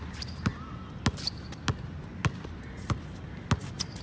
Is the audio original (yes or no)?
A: yes